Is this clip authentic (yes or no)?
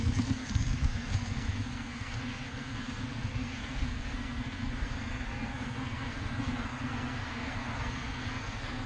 no